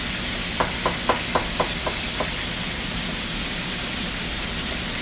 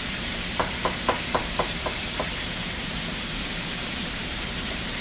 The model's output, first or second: second